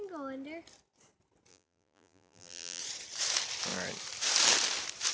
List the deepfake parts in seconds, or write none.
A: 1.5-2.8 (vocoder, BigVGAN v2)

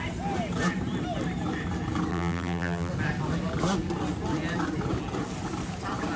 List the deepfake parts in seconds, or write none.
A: 2.1-2.9 (vocoder, BigVGAN v2)